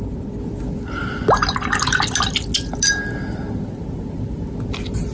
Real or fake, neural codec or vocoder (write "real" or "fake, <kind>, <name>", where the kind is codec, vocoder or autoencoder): real